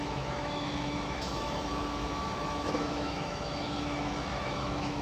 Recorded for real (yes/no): no